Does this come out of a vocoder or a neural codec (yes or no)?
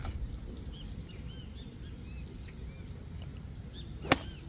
no